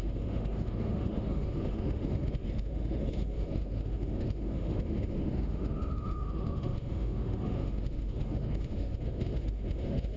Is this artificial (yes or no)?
yes